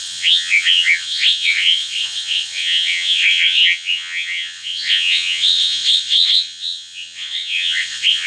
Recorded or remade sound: remade